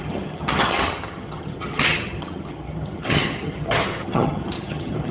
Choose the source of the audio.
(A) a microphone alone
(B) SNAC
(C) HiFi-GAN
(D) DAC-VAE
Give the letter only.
C